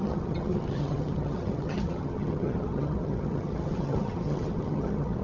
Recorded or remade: remade